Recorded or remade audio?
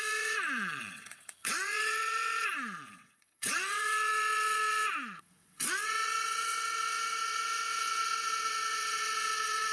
remade